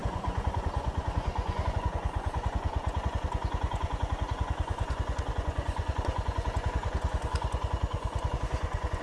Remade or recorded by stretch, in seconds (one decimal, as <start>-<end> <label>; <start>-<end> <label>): 0.0-9.0 remade